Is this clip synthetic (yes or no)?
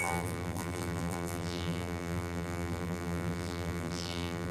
yes